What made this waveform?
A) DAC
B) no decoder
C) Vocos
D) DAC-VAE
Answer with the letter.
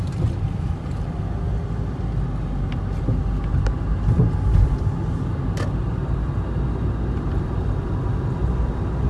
B